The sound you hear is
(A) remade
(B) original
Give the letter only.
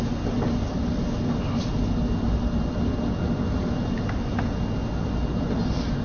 B